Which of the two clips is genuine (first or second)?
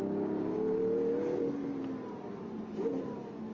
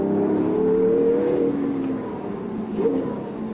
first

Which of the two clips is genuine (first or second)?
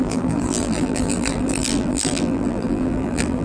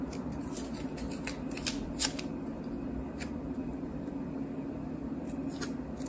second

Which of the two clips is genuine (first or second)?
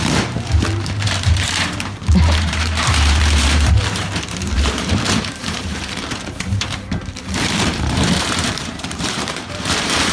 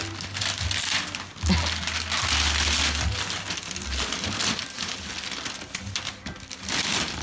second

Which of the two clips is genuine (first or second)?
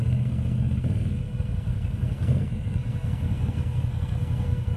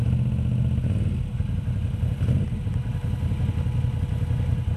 second